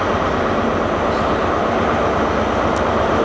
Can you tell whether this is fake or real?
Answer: real